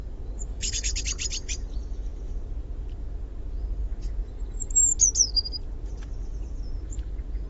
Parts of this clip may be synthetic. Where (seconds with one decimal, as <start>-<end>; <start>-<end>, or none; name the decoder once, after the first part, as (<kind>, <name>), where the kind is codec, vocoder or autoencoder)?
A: 0.5-1.0 (codec, DAC)